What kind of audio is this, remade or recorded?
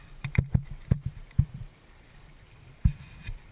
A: remade